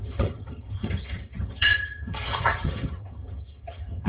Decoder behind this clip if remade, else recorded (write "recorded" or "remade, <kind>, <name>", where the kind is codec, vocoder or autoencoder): remade, vocoder, HiFi-GAN